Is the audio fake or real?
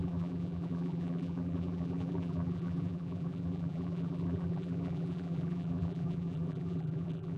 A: fake